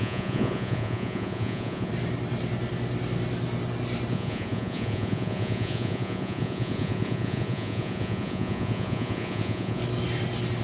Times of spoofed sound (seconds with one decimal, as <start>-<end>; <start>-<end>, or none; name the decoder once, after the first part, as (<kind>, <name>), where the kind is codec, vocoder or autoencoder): 0.0-1.9 (vocoder, Vocos); 4.1-9.8